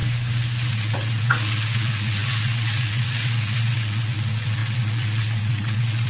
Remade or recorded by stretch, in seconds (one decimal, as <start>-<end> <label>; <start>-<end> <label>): 0.0-0.7 recorded; 0.7-6.1 remade